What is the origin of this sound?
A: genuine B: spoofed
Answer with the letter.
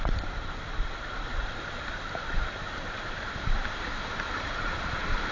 B